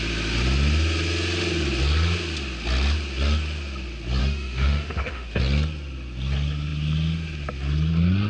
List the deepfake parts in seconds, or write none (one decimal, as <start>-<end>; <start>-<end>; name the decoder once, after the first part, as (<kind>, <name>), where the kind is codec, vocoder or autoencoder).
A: 4.2-5.4 (autoencoder, DAC-VAE)